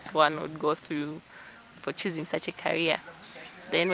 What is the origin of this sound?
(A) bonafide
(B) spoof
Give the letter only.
B